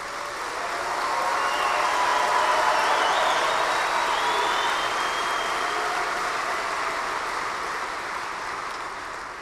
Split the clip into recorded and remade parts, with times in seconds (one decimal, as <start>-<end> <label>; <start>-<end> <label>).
0.0-9.4 recorded